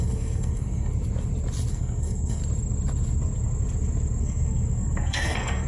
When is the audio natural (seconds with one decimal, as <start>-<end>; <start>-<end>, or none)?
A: 0.9-1.7; 2.4-4.2